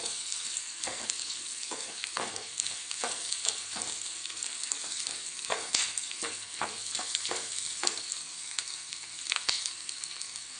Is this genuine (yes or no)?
no